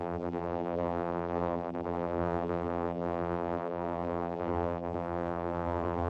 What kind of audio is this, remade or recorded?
remade